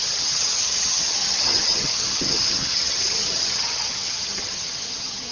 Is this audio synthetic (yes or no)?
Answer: yes